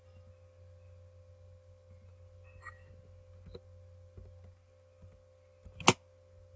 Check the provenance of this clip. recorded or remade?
recorded